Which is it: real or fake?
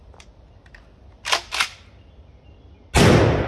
real